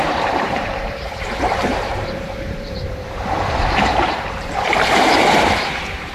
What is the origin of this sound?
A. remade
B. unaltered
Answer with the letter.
A